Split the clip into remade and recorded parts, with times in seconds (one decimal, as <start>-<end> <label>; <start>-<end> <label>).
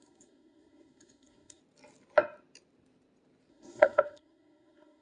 0.0-1.6 remade; 1.6-3.5 recorded; 3.5-5.0 remade